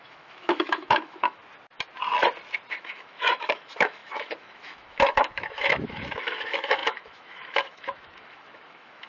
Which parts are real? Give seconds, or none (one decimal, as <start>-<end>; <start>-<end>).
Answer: 1.4-2.7